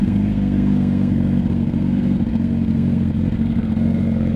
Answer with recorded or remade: remade